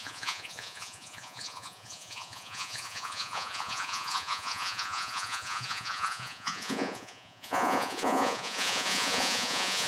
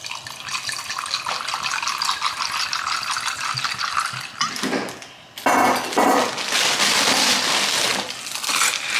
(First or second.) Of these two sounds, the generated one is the first